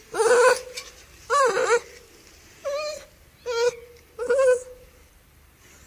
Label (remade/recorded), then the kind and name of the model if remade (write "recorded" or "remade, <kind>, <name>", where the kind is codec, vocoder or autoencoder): recorded